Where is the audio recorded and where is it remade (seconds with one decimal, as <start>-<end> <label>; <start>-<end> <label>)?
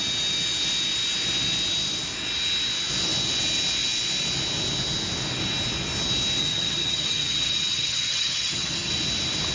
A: 0.0-6.4 recorded; 6.4-8.9 remade; 8.9-9.5 recorded